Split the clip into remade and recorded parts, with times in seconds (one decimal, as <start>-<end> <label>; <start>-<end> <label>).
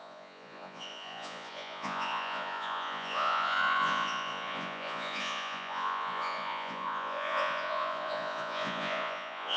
0.0-9.6 remade